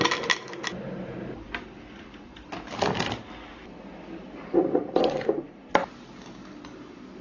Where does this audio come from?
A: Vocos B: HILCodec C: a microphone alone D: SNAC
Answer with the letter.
C